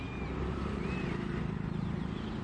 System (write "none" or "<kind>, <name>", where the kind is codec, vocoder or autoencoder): none